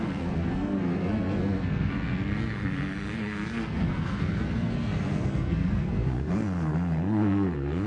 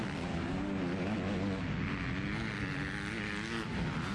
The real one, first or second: second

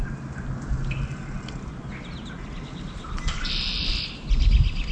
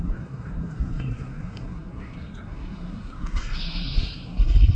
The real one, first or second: first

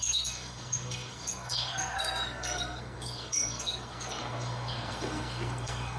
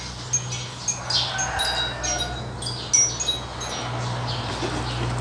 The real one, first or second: second